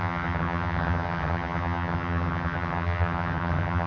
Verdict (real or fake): fake